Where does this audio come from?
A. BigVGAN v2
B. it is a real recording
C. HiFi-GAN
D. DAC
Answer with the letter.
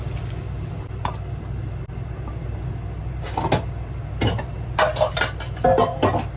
B